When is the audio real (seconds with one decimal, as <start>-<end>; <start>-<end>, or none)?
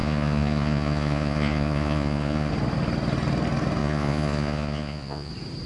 2.5-3.8; 5.3-5.7